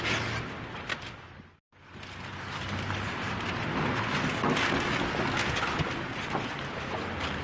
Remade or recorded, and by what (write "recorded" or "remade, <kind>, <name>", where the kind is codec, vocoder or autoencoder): recorded